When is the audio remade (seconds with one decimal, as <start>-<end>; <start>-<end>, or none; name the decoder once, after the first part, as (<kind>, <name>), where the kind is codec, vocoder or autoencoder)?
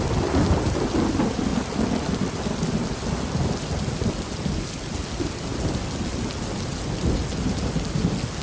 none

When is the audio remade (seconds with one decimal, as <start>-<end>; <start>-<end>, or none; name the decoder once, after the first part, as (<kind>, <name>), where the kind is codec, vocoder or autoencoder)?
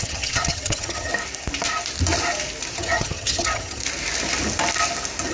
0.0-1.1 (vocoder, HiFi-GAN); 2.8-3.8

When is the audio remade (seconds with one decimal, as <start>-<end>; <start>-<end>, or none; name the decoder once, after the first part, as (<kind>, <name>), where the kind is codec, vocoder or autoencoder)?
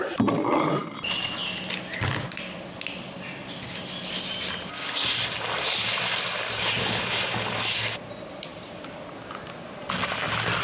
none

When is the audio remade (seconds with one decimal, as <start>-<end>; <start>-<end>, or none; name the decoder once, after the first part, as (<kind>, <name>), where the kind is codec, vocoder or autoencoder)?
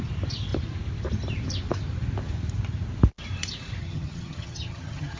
3.8-5.2 (vocoder, HiFi-GAN)